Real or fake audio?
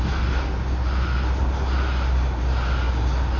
real